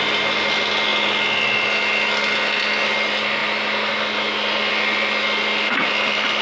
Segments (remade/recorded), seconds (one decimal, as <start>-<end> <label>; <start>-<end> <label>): 0.0-6.4 recorded